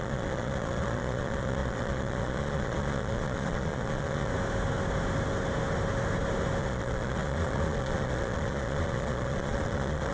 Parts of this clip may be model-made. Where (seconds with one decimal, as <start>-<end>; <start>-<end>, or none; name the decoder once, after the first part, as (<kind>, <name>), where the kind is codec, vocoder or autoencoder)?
0.0-4.3 (vocoder, Vocos); 6.6-10.1